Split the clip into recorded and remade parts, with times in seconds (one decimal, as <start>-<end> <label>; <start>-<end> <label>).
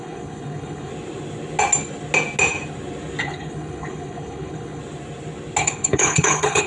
0.0-0.9 remade; 0.9-3.2 recorded; 3.2-4.8 remade; 4.8-5.6 recorded; 5.6-6.7 remade